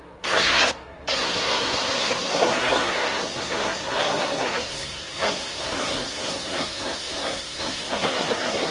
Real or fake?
fake